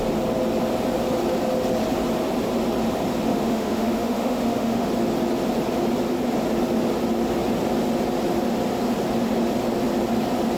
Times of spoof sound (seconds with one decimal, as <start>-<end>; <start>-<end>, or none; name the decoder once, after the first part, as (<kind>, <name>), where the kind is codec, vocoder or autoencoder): 3.3-4.9 (autoencoder, DAC-VAE)